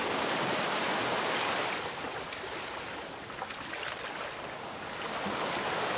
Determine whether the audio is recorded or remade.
recorded